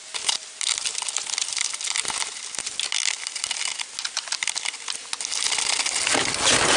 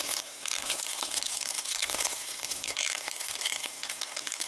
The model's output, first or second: second